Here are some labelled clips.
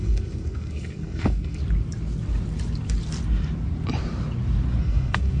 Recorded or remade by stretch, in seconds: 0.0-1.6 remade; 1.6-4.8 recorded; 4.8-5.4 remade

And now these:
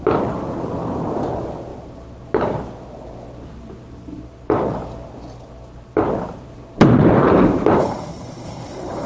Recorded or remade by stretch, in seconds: 0.0-7.8 recorded; 7.8-9.1 remade

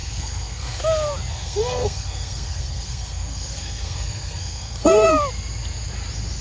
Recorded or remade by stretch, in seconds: 0.0-0.8 remade; 0.8-1.3 recorded; 1.3-5.1 remade; 5.1-6.4 recorded

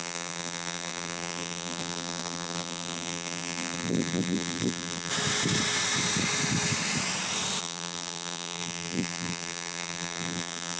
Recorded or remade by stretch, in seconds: 0.0-5.1 remade; 5.1-7.6 recorded; 7.6-10.8 remade

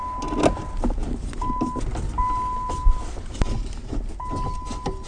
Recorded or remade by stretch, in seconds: 0.0-5.1 recorded